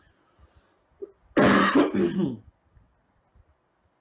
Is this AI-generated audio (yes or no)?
no